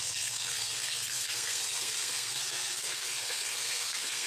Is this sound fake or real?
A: fake